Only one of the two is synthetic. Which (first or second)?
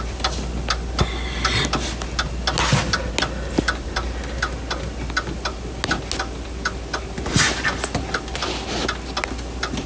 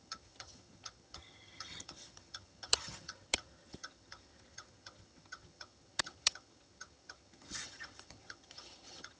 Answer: second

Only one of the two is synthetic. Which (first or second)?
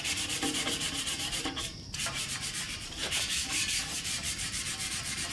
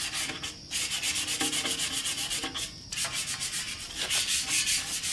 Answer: first